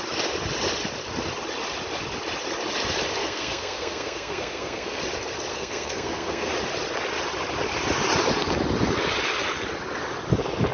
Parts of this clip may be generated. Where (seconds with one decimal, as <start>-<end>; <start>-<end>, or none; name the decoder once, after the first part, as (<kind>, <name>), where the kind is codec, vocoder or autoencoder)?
3.2-5.0 (codec, SNAC); 5.5-6.5

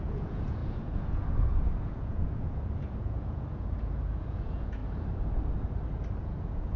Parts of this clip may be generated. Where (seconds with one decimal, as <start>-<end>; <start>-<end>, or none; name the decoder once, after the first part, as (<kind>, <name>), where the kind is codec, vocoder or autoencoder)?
0.0-4.8 (vocoder, Vocos); 6.2-6.8

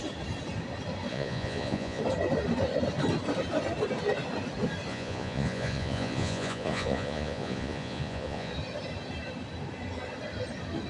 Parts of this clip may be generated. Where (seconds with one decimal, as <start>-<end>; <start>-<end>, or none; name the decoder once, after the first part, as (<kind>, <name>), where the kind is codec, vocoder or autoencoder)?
1.1-2.0 (vocoder, Vocos); 4.9-8.5